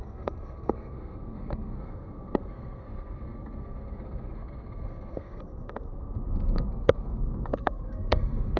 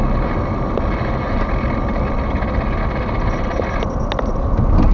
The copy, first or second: first